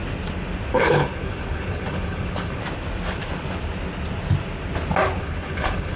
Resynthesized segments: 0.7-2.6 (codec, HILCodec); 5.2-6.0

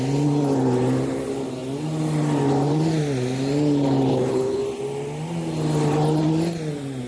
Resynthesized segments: 4.1-4.6 (codec, HILCodec)

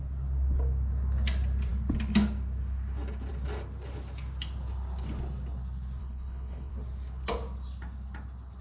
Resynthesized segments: 6.0-6.7 (codec, HILCodec)

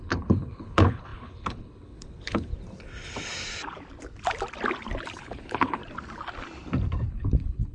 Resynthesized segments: 0.0-2.5 (codec, HILCodec); 5.2-5.8; 7.1-7.7

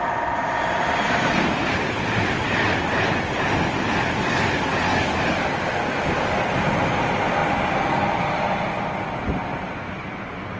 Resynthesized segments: none

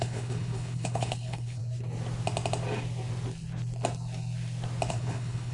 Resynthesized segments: 0.0-1.6 (codec, HILCodec); 4.9-5.5